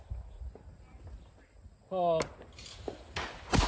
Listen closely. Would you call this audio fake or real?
real